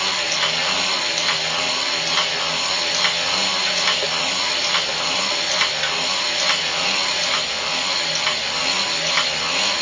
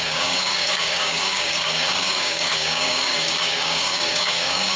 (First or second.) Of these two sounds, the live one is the first